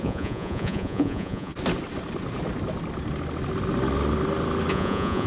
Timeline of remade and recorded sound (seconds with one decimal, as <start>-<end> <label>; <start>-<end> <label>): 0.0-1.5 remade; 1.5-4.7 recorded; 4.7-5.3 remade